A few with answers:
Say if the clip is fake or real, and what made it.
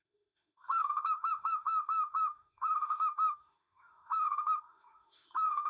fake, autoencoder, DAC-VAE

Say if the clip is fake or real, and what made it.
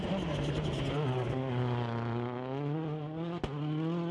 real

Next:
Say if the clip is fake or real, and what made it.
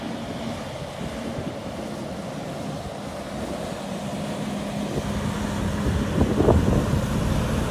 real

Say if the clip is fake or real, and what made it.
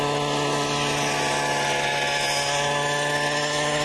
real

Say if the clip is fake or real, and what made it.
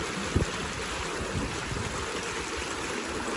real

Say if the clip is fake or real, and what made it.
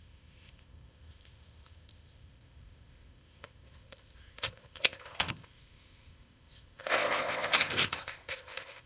fake, codec, ZipCodec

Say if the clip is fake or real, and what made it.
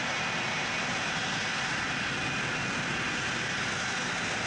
real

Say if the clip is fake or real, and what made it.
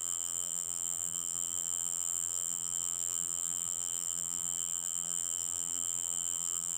fake, vocoder, BigVGAN v2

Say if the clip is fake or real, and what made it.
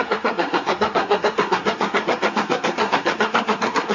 fake, codec, SNAC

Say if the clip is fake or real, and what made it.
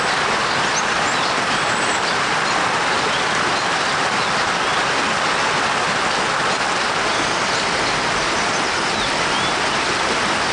real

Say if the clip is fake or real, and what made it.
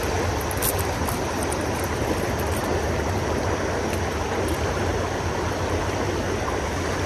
real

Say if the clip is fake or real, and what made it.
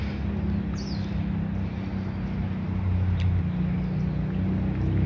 real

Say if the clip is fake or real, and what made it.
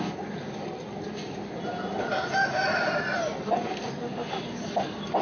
real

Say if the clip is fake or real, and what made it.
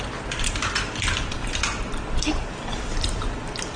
real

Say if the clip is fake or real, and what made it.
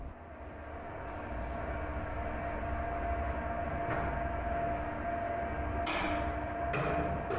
real